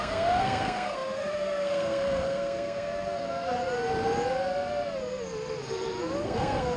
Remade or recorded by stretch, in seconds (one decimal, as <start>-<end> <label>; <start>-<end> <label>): 0.0-3.6 remade; 3.6-6.2 recorded; 6.2-6.8 remade